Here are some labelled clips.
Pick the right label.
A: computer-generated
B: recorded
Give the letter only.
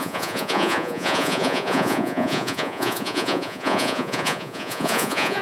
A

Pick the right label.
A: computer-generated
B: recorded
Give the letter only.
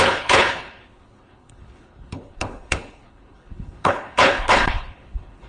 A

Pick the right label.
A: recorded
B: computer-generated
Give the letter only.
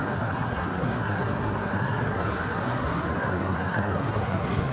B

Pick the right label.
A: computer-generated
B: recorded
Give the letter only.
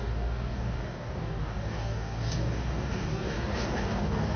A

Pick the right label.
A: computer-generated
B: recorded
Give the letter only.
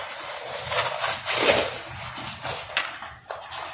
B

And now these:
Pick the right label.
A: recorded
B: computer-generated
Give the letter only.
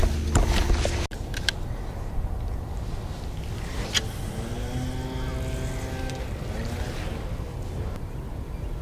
A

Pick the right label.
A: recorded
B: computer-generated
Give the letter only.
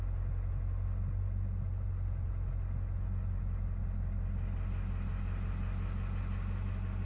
A